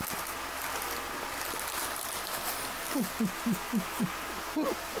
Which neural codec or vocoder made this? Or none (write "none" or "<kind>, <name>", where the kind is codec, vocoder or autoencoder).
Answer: none